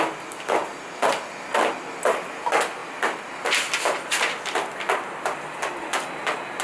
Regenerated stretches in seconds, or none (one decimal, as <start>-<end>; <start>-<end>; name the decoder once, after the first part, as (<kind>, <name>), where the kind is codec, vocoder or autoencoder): none